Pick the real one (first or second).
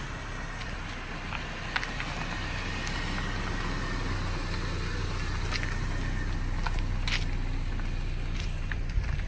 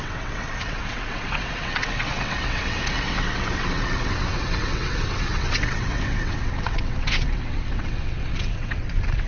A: first